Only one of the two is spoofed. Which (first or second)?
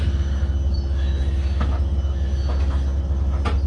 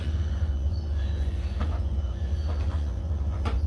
second